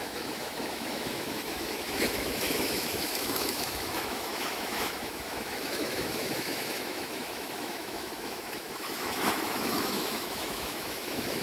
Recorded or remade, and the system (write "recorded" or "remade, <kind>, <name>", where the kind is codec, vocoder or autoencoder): remade, autoencoder, DAC-VAE